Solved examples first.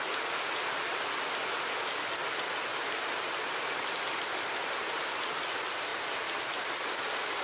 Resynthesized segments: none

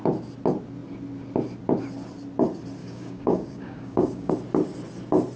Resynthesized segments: 2.8-4.3 (codec, DAC)

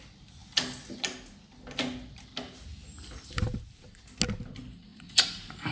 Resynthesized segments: none

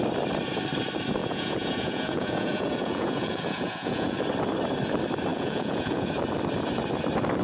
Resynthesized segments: 1.2-4.2 (vocoder, Vocos); 5.3-6.1

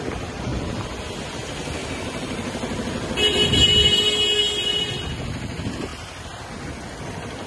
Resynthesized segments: none

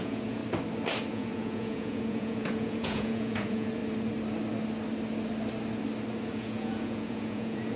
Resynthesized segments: 0.0-0.4 (vocoder, Vocos); 1.1-3.8; 6.3-7.8

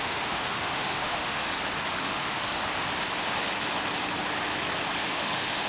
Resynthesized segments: 0.0-1.5 (autoencoder, DAC-VAE); 2.0-2.6; 5.0-5.7